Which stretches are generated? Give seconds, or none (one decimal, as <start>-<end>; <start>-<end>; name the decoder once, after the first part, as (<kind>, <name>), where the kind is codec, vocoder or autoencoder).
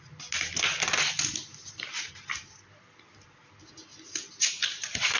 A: none